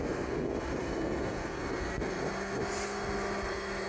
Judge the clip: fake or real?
real